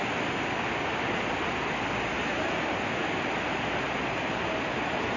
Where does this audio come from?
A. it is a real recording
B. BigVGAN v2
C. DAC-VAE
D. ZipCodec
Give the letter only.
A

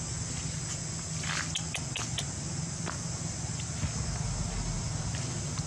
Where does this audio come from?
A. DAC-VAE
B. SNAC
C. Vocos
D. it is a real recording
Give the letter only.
D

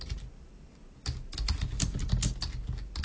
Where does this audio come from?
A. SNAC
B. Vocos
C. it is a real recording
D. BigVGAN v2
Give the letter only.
C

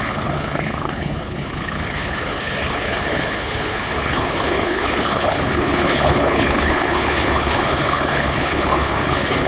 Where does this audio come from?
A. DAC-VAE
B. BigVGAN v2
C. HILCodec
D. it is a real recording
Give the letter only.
C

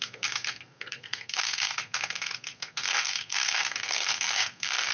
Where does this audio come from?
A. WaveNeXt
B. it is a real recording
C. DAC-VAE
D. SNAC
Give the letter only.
D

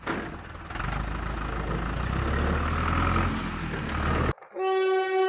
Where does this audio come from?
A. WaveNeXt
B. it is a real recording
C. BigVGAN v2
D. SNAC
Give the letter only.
B